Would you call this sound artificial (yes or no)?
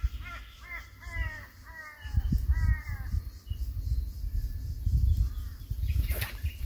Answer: no